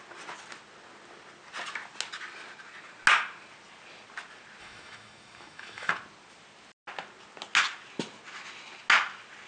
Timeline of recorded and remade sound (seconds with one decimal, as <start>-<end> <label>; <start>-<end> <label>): 0.0-4.6 recorded; 4.6-5.9 remade; 5.9-9.5 recorded